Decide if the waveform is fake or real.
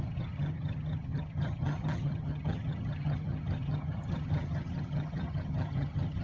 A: fake